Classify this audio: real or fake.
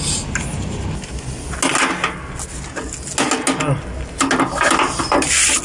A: real